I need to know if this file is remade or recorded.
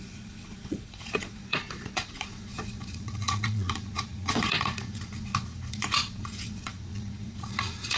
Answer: remade